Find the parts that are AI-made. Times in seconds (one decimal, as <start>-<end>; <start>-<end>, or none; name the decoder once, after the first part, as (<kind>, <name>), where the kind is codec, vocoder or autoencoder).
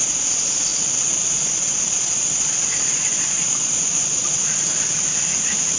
0.0-4.7 (vocoder, Vocos)